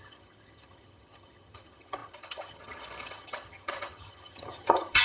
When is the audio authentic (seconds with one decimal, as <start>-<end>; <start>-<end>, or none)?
none